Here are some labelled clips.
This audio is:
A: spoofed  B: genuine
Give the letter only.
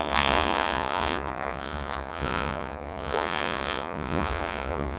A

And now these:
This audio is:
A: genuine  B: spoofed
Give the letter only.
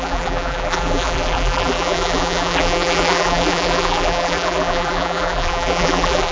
B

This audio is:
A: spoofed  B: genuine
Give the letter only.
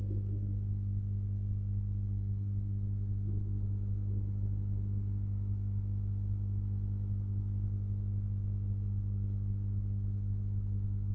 A